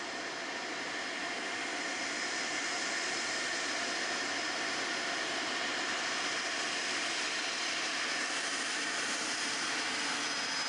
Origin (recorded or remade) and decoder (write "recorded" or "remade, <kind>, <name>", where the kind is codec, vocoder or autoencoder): recorded